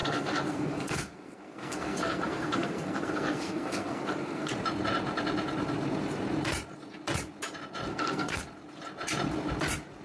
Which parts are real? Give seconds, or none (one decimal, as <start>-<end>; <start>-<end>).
4.5-7.9; 8.4-10.0